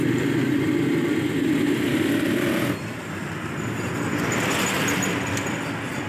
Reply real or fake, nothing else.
real